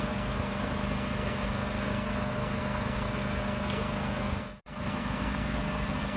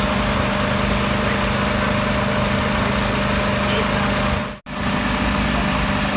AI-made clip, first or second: first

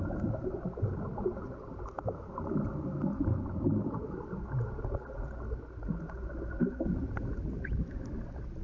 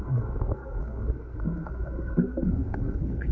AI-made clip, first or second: second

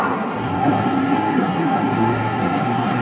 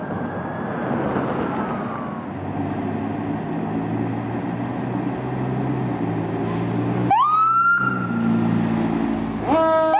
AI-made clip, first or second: first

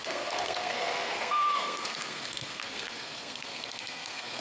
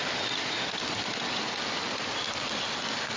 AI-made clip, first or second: first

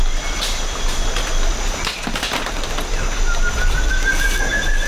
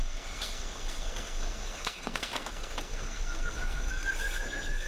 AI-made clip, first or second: second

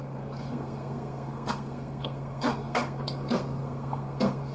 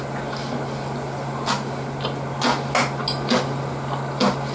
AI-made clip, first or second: first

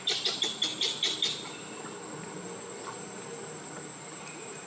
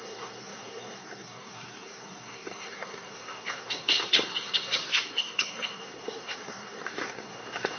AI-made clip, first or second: second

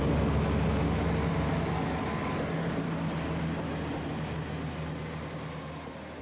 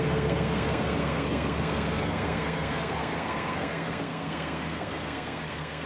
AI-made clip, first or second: second